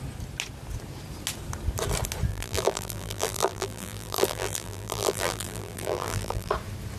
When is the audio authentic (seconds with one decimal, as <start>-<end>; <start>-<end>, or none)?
0.0-2.3; 6.5-7.0